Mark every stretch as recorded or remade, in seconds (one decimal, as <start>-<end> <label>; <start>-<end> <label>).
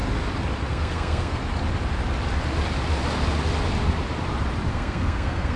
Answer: 0.0-0.7 recorded; 0.7-1.4 remade; 1.4-4.7 recorded; 4.7-5.6 remade